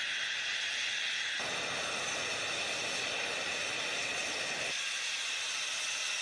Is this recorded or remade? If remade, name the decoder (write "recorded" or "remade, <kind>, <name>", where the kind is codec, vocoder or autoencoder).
recorded